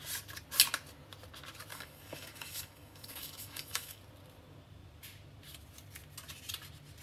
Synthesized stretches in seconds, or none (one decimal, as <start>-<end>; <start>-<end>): 1.7-4.0